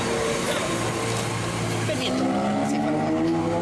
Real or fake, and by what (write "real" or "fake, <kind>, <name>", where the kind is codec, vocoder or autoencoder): real